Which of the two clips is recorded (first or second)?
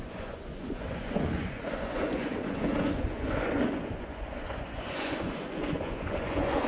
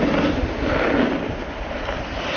second